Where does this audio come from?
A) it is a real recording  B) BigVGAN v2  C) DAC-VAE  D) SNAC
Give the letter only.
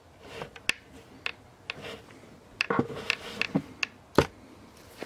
A